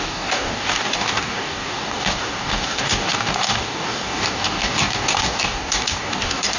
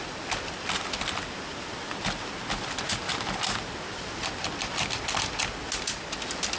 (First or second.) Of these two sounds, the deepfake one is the first